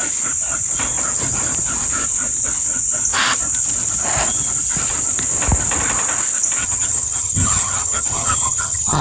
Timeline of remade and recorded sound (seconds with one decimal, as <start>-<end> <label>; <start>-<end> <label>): 0.0-6.6 recorded; 6.6-9.0 remade